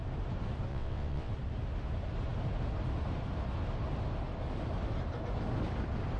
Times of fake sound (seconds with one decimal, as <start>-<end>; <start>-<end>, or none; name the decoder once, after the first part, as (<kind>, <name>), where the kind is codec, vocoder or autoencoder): 0.7-1.3 (vocoder, WaveNeXt)